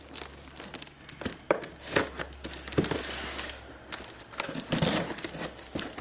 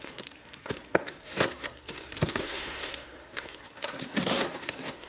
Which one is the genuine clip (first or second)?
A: first